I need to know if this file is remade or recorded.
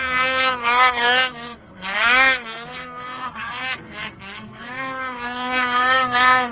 remade